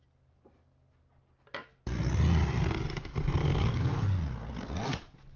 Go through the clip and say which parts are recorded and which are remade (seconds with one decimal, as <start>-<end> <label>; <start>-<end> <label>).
0.0-3.4 recorded; 3.4-4.0 remade; 4.0-5.4 recorded